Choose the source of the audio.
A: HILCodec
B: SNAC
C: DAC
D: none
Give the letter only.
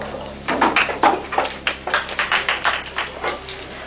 D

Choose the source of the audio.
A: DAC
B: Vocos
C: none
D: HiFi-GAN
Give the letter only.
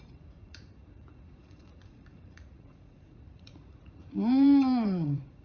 B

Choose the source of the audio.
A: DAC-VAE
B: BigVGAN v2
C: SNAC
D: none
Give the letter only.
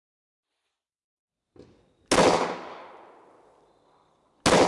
D